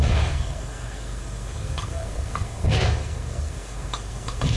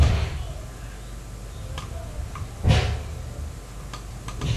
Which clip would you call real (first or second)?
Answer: second